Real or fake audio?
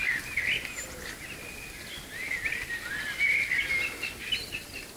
real